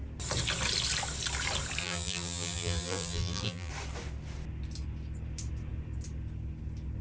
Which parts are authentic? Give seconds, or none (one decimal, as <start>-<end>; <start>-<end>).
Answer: 0.0-1.8; 3.7-7.0